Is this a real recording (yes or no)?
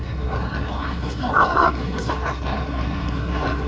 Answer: no